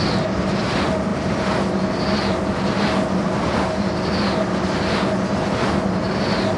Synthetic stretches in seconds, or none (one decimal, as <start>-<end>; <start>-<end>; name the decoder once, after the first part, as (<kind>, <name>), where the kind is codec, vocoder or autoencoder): none